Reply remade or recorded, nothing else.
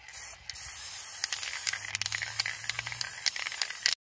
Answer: recorded